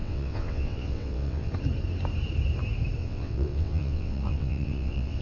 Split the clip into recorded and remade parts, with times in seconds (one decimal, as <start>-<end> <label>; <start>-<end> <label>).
0.0-1.5 remade; 1.5-3.0 recorded; 3.0-5.2 remade